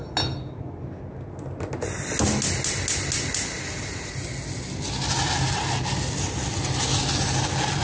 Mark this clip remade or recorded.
recorded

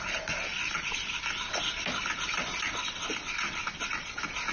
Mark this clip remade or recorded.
recorded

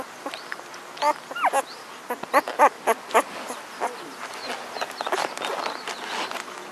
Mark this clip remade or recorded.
recorded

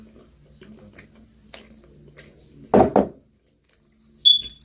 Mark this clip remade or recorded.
recorded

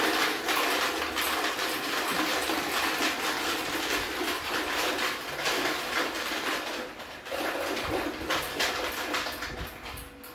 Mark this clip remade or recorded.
recorded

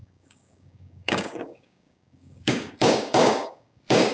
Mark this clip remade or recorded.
remade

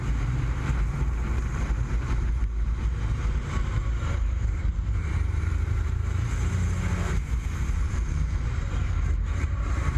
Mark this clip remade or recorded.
remade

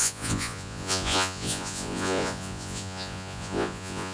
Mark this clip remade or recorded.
remade